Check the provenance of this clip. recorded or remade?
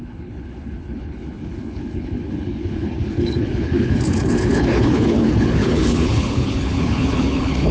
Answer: remade